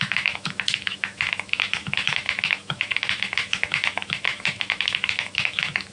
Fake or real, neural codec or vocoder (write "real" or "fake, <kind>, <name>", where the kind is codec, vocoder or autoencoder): fake, autoencoder, DAC-VAE